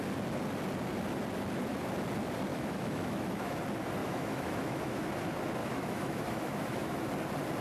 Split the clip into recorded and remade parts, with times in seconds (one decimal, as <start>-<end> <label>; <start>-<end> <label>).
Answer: 0.0-2.5 recorded; 2.5-3.6 remade; 3.6-4.0 recorded; 4.0-5.1 remade; 5.1-5.6 recorded; 5.6-7.1 remade; 7.1-7.6 recorded